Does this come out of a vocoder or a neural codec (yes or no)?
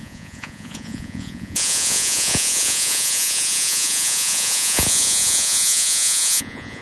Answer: yes